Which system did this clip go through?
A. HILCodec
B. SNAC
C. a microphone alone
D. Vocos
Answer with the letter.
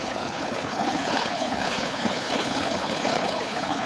A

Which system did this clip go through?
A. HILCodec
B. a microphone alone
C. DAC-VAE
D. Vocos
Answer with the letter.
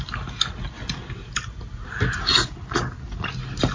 B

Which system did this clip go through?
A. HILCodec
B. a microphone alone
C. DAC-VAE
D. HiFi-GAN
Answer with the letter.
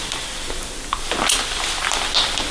B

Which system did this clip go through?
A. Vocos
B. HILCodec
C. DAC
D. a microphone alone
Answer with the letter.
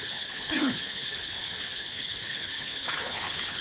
B